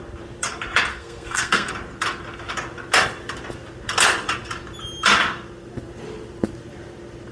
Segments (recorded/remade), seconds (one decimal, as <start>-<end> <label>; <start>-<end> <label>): 0.0-0.9 recorded; 0.9-1.7 remade; 1.7-7.3 recorded